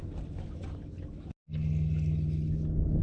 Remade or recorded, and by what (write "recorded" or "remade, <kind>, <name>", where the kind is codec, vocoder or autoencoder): recorded